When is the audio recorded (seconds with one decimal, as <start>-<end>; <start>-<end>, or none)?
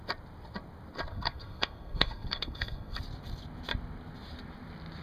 0.0-1.1; 3.0-5.0